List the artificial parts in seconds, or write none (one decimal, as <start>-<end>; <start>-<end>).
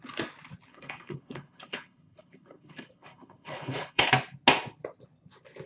0.7-4.1